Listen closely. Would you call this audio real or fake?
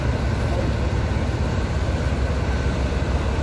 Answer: real